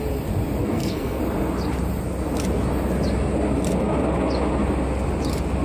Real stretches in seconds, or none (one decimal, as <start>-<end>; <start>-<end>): 0.0-0.6; 1.2-5.6